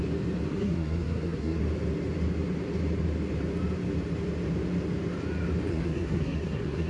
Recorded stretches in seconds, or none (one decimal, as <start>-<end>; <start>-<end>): 0.0-0.5; 1.6-5.7